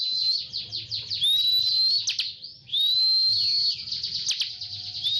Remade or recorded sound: recorded